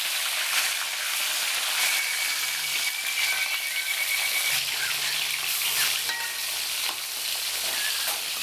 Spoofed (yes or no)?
no